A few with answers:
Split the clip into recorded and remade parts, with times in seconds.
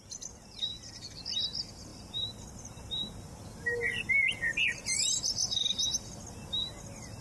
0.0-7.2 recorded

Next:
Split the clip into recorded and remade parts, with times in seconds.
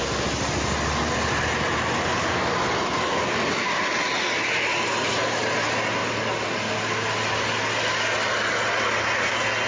0.0-9.7 recorded